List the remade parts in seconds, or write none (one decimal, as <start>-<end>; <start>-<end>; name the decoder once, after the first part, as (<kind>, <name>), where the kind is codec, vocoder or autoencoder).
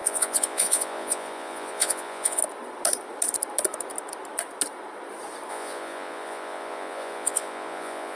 0.0-2.4 (vocoder, Vocos); 5.5-8.2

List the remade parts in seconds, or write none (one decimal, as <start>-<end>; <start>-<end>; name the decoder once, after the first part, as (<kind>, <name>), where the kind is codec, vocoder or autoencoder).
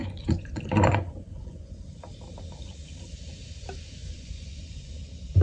0.0-1.7 (vocoder, Vocos); 4.0-4.9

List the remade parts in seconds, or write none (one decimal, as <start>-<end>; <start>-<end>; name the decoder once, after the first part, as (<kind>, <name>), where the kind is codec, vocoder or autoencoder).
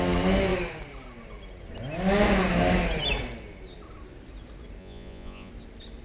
4.8-5.5 (vocoder, Vocos)